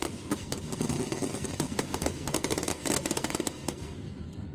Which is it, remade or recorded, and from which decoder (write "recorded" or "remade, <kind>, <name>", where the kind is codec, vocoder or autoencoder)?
remade, codec, SNAC